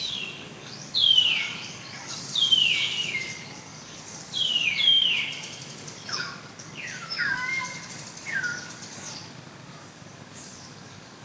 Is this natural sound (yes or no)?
no